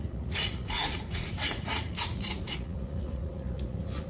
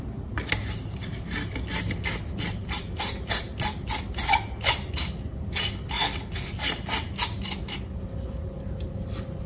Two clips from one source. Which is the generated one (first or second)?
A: first